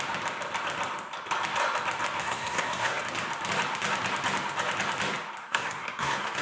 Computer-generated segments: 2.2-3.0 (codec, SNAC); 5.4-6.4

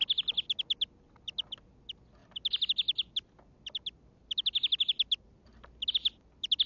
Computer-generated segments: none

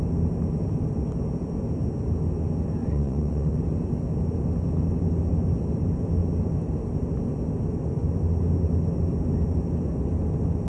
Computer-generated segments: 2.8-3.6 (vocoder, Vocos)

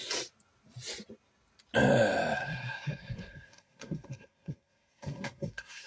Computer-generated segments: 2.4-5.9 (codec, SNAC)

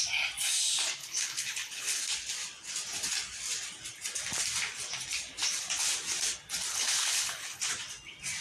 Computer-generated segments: 1.0-2.0 (codec, HILCodec); 6.7-7.6

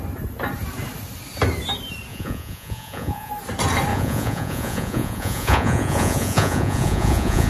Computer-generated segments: 2.1-3.3 (vocoder, Vocos); 3.9-7.5

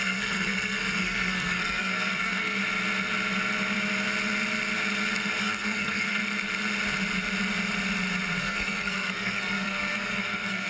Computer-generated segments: 0.0-2.6 (codec, SNAC); 5.4-6.2; 8.4-10.7